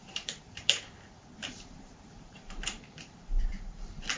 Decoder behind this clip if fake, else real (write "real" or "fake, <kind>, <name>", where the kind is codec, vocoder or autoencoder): fake, vocoder, BigVGAN v2